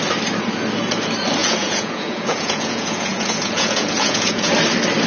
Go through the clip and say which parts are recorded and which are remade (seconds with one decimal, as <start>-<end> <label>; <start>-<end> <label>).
0.0-1.4 recorded; 1.4-4.5 remade; 4.5-5.1 recorded